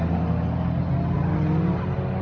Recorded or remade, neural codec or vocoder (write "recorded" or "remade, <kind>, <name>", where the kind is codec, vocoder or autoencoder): recorded